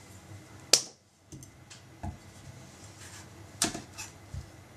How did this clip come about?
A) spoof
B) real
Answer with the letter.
B